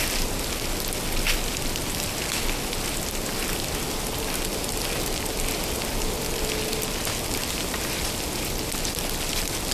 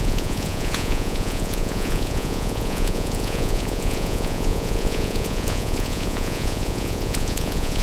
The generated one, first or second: second